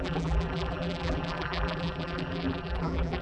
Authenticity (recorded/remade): remade